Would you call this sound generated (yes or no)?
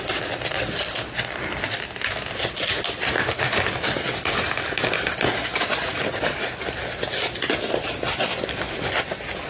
no